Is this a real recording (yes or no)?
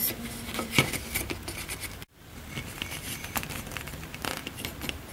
no